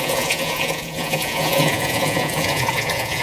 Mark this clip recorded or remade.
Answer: remade